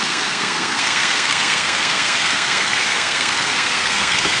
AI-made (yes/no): yes